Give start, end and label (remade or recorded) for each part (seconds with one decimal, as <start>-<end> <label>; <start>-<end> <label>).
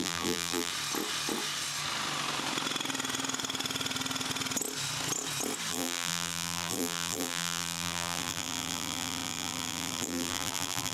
0.0-0.7 remade; 0.7-5.7 recorded; 5.7-10.9 remade